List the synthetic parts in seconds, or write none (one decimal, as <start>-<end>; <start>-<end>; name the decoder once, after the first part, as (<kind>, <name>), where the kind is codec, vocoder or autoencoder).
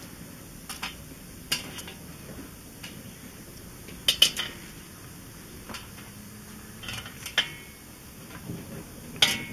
none